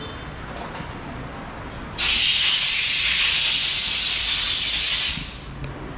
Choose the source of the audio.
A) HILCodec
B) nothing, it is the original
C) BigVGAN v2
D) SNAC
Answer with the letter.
B